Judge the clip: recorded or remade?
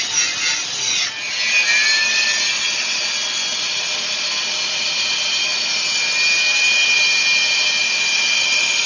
recorded